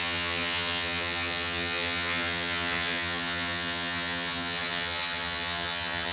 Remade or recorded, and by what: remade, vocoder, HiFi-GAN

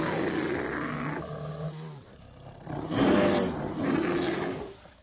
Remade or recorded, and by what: recorded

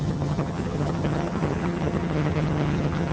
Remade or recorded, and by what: remade, vocoder, HiFi-GAN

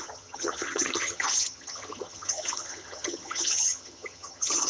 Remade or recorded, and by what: remade, vocoder, HiFi-GAN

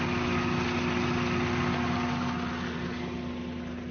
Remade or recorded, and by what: recorded